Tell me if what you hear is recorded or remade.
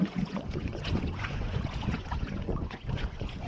remade